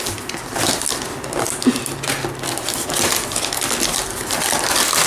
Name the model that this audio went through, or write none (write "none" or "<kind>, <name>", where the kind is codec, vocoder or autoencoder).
none